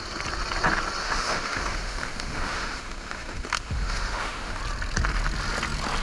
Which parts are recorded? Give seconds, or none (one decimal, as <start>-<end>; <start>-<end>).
0.0-1.0; 4.6-6.0